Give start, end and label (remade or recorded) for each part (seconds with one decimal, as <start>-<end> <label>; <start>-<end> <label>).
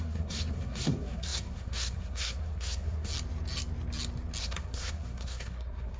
0.0-3.1 remade; 3.1-4.4 recorded; 4.4-6.0 remade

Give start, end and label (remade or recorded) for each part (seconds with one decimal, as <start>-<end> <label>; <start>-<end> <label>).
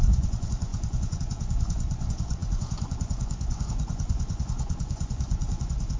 0.0-6.0 remade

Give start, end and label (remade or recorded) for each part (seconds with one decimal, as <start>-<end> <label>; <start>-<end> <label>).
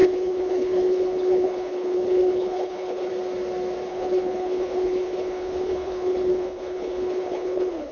0.0-3.1 remade; 3.1-3.9 recorded; 3.9-7.9 remade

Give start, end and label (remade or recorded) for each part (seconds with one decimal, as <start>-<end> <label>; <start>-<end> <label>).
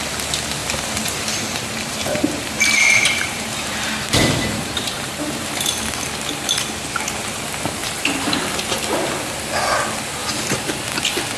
0.0-0.6 recorded; 0.6-5.8 remade; 5.8-7.8 recorded; 7.8-8.3 remade; 8.3-10.2 recorded; 10.2-10.8 remade; 10.8-11.4 recorded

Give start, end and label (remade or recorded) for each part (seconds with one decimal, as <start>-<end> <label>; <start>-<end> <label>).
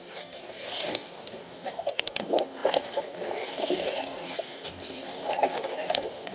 0.0-6.3 remade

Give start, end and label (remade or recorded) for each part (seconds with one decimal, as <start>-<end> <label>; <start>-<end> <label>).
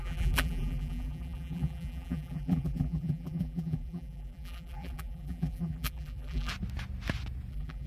0.0-6.5 remade; 6.5-7.5 recorded; 7.5-7.9 remade